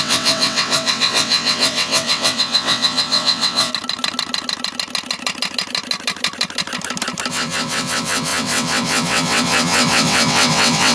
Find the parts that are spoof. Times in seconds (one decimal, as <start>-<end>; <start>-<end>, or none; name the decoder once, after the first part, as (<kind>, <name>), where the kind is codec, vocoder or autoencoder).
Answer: 0.0-3.7 (vocoder, WaveNeXt); 7.3-10.9